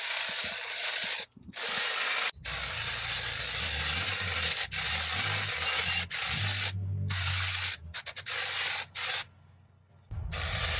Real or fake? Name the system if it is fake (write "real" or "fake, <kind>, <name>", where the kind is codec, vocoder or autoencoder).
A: real